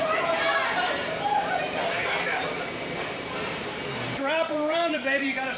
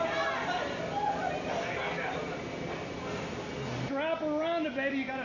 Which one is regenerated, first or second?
first